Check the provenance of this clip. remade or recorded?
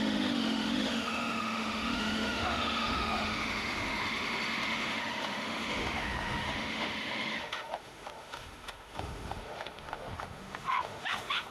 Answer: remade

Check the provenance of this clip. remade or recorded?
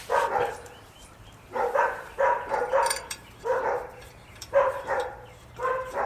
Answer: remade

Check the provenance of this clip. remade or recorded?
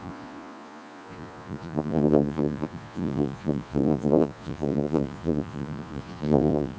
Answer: remade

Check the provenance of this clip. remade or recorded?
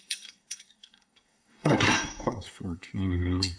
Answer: remade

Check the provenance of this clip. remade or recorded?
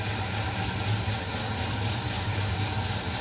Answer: recorded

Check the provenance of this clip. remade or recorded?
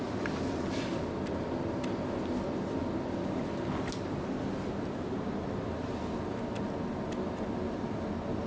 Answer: recorded